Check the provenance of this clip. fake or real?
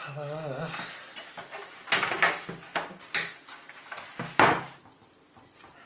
real